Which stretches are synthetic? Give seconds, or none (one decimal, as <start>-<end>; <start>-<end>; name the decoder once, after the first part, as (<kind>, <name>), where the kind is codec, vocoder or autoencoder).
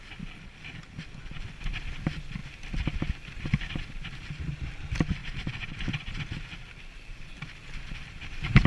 none